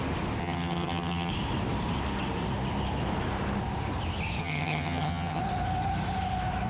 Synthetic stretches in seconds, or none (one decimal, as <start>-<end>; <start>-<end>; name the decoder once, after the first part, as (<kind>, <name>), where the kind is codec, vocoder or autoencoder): 0.4-1.3 (vocoder, HiFi-GAN); 4.4-5.4